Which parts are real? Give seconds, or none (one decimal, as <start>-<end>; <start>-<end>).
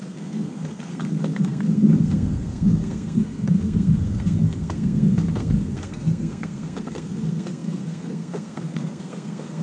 none